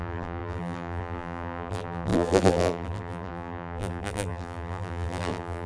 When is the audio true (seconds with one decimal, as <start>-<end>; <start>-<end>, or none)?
none